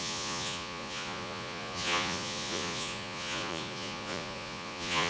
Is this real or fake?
fake